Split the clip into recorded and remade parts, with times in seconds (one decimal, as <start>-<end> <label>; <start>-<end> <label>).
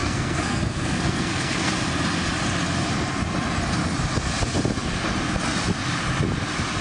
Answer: 0.0-1.7 remade; 1.7-6.8 recorded